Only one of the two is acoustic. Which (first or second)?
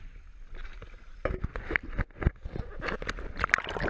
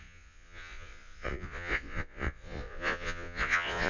first